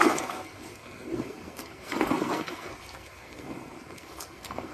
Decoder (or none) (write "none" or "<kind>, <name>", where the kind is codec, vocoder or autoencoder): codec, SNAC